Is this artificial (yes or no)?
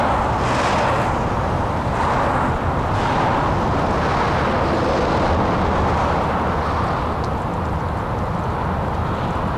no